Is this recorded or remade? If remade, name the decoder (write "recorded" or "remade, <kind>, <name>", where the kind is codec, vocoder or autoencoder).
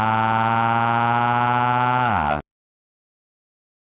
recorded